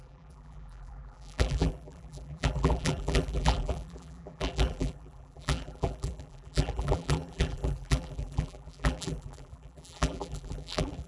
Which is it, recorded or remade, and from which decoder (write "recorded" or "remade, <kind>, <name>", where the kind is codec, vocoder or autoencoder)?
remade, vocoder, BigVGAN v2